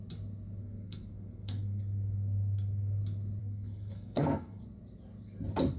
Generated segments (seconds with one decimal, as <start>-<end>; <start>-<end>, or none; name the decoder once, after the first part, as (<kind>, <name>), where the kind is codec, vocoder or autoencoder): 0.6-3.0 (codec, SNAC); 3.4-4.6